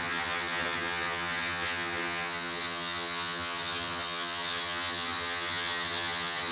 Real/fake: fake